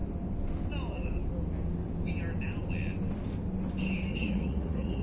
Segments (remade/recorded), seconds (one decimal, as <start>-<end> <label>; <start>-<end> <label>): 0.0-4.1 recorded; 4.1-5.0 remade

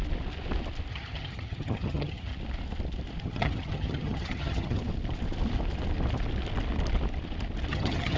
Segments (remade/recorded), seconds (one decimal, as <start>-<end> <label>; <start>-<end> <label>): 0.0-0.9 recorded; 0.9-2.3 remade; 2.3-3.2 recorded; 3.2-4.8 remade; 4.8-7.7 recorded; 7.7-8.2 remade

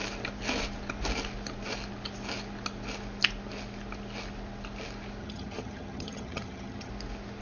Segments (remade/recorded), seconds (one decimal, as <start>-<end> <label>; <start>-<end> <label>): 0.0-5.2 recorded; 5.2-6.9 remade; 6.9-7.4 recorded